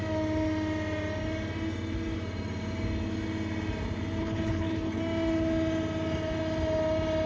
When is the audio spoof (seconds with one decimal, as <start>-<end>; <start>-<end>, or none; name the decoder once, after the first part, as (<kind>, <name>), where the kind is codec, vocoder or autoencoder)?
4.2-5.0 (codec, HILCodec)